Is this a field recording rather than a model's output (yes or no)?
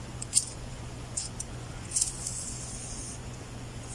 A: no